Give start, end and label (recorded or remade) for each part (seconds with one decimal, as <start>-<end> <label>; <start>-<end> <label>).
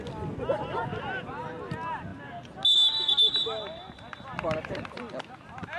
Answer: 0.0-5.8 recorded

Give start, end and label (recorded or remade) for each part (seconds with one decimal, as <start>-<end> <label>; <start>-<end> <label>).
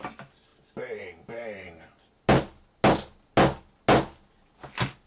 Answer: 0.0-5.1 recorded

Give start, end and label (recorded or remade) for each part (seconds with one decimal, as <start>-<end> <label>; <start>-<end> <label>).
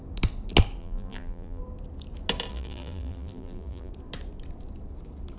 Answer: 0.0-0.8 recorded; 0.8-1.6 remade; 1.6-2.5 recorded; 2.5-3.9 remade; 3.9-5.4 recorded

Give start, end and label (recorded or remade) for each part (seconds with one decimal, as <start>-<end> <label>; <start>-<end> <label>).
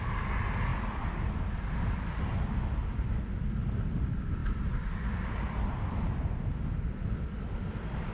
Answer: 0.0-2.8 recorded; 2.8-3.9 remade; 3.9-4.4 recorded; 4.4-6.0 remade; 6.0-8.1 recorded